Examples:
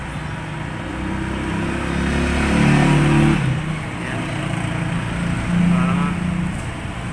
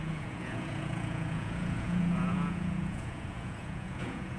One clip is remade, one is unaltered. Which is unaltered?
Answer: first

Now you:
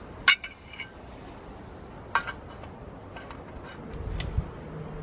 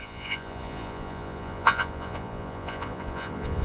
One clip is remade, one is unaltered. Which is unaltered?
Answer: first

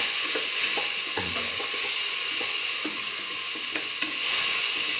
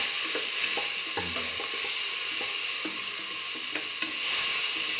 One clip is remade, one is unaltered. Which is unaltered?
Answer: second